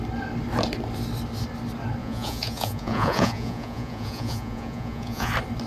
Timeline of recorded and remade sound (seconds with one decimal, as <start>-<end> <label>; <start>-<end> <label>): 0.0-2.0 recorded; 2.0-5.3 remade; 5.3-5.7 recorded